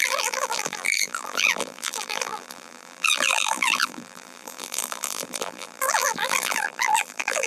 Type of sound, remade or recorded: remade